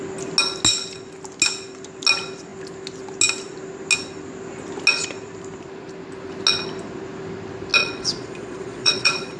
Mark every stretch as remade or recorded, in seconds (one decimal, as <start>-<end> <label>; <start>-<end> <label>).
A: 0.0-7.8 recorded; 7.8-9.4 remade